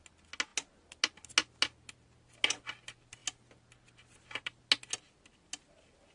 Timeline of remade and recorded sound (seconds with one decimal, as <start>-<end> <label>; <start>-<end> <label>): 0.0-6.1 recorded